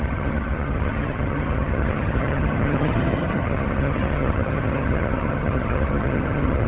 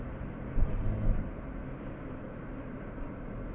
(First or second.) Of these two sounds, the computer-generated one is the first